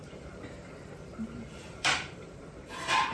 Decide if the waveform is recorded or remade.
remade